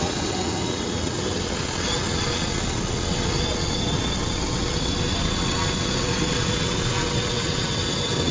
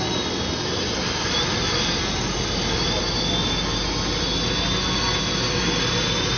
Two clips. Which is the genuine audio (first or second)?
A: second